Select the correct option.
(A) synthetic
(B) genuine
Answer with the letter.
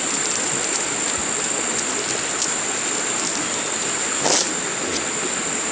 B